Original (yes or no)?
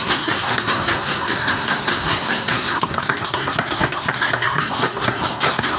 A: no